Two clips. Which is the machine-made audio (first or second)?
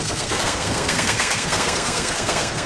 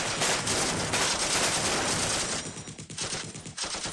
first